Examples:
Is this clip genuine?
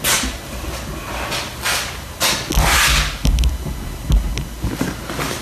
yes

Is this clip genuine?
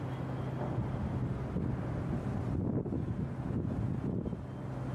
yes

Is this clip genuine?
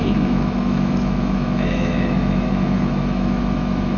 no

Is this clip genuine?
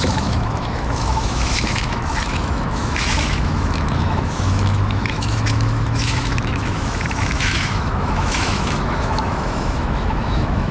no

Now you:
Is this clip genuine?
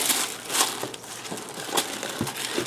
yes